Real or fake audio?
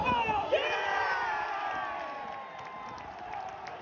fake